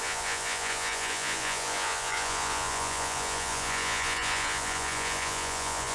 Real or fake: fake